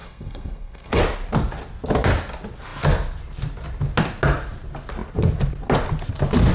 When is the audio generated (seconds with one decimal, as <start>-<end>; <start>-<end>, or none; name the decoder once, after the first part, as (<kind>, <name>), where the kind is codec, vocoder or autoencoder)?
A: 0.0-1.0 (codec, SNAC)